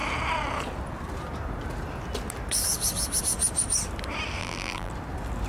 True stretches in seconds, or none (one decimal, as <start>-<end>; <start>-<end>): 0.0-4.4; 4.9-5.5